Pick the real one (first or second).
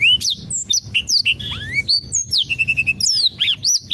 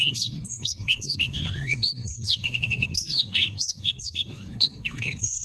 first